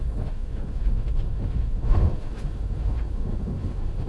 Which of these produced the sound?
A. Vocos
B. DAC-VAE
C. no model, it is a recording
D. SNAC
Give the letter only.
B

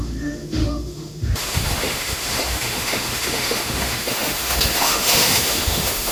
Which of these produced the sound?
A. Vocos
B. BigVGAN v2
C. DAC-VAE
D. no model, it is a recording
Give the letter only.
C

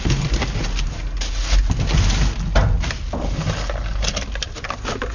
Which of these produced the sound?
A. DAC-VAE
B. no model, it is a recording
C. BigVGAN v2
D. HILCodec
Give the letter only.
B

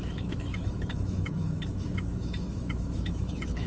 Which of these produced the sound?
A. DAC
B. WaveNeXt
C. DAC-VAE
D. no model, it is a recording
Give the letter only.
C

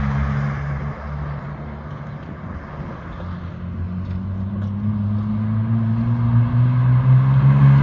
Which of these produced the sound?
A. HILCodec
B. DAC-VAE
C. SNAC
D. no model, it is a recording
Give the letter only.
D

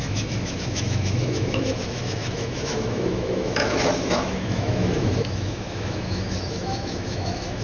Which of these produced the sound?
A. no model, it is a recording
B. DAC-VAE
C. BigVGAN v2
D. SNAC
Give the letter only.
B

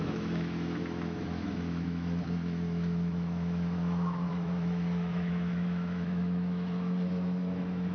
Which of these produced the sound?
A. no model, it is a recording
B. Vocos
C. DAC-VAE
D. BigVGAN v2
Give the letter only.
C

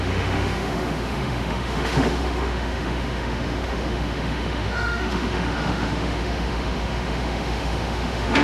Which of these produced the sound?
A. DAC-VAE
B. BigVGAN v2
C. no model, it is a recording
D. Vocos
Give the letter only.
A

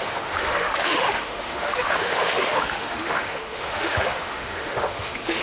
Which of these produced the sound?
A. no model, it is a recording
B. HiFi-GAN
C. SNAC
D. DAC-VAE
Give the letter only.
D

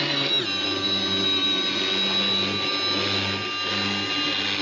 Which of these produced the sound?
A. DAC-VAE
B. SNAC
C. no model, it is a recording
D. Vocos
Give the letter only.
C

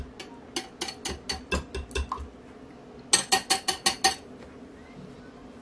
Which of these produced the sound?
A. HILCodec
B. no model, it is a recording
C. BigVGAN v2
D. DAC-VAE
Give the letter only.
B